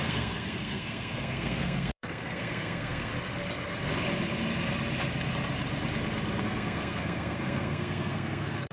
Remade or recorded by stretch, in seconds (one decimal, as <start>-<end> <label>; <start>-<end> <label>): 0.0-3.1 remade; 3.1-6.4 recorded; 6.4-8.7 remade

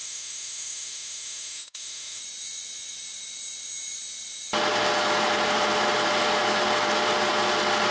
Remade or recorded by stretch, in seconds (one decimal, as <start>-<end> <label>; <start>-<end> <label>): 0.0-2.2 remade; 2.2-7.9 recorded

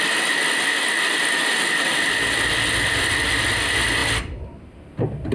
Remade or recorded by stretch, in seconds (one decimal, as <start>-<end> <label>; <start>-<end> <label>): 0.0-5.3 recorded

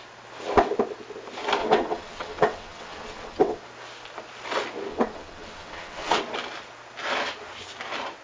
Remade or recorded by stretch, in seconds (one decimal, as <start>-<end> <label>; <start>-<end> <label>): 0.0-1.6 recorded; 1.6-3.6 remade; 3.6-4.9 recorded; 4.9-6.2 remade; 6.2-8.2 recorded

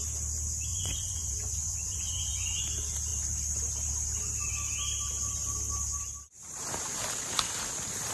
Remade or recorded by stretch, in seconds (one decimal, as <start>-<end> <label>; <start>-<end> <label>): 0.0-0.7 recorded; 0.7-2.6 remade; 2.6-8.1 recorded

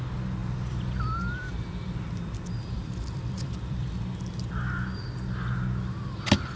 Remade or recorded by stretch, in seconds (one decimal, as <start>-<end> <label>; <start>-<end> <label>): 0.0-0.4 recorded; 0.4-4.0 remade; 4.0-6.6 recorded

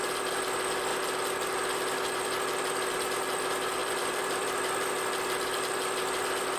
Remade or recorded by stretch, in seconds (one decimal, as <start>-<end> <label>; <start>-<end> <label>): 0.0-3.8 recorded; 3.8-4.9 remade; 4.9-6.6 recorded

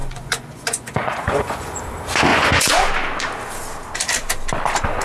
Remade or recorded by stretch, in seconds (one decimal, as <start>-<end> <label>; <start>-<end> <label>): 0.0-1.8 remade; 1.8-2.3 recorded; 2.3-2.9 remade; 2.9-5.0 recorded